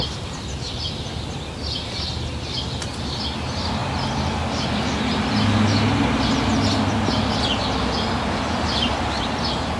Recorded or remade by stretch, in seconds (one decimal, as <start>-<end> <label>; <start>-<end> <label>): 0.0-9.8 recorded